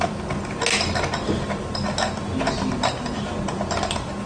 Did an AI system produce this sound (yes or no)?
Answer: no